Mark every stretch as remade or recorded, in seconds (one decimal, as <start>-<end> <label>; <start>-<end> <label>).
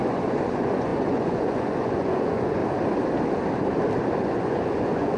0.0-2.6 remade; 2.6-4.2 recorded; 4.2-5.2 remade